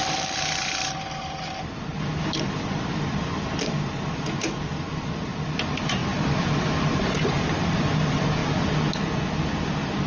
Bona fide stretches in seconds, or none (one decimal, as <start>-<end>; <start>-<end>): 8.4-9.6